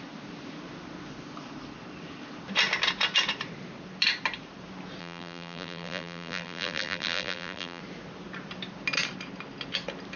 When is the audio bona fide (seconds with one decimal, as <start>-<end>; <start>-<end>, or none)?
0.0-5.0; 7.8-10.2